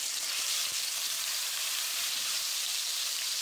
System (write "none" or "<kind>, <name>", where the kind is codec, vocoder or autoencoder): vocoder, BigVGAN v2